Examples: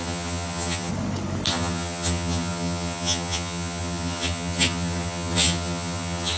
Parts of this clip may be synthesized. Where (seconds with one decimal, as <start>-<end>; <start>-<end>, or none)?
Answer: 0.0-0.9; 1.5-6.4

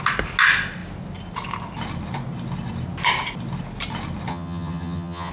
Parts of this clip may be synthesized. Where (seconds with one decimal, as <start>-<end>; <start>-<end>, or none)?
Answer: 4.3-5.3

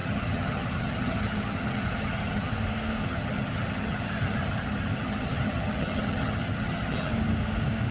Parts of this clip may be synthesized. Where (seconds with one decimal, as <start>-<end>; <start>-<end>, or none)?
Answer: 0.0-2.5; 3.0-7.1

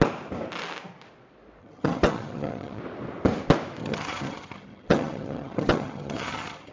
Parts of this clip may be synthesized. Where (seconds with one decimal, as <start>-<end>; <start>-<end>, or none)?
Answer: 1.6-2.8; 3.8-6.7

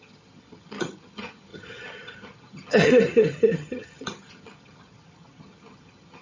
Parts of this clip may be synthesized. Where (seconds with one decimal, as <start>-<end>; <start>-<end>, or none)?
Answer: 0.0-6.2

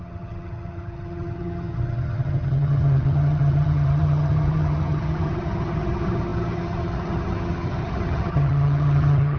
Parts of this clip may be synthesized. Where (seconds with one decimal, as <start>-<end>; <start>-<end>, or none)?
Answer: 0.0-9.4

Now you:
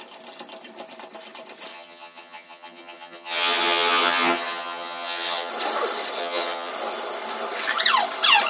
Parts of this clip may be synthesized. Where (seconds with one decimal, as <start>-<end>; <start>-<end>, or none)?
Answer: 1.7-5.5; 6.2-6.7